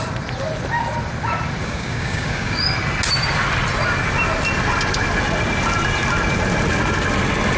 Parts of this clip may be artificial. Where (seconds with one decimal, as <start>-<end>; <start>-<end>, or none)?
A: 1.6-2.6